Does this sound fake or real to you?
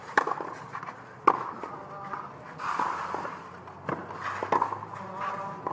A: real